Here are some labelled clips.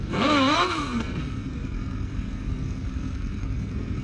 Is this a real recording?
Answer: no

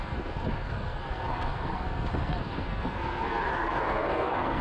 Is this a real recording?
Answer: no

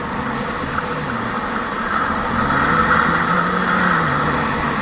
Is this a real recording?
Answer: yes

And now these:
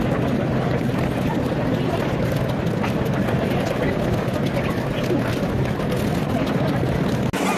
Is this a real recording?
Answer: yes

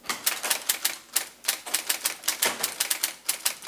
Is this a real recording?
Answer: yes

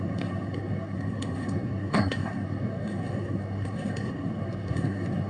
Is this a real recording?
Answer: no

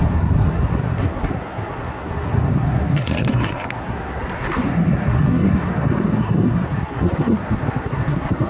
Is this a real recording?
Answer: no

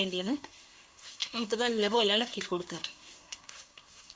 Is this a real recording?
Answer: no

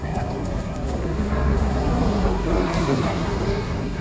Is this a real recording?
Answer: no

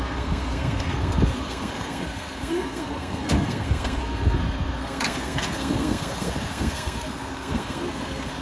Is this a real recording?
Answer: no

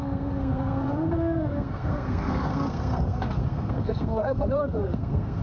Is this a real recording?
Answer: no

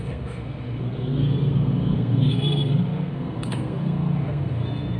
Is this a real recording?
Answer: no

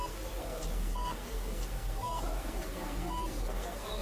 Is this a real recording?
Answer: no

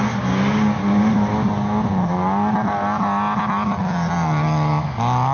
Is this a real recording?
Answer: yes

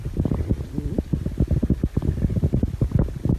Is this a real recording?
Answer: yes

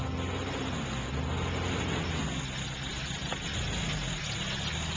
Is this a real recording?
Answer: yes